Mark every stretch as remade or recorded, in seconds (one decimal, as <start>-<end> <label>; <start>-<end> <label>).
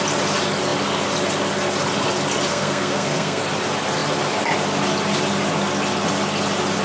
0.0-2.5 recorded; 2.5-3.4 remade; 3.4-6.8 recorded